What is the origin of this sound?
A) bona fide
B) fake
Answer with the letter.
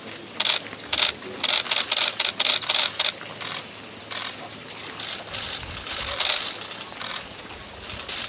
A